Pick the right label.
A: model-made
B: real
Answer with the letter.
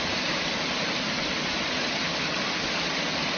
B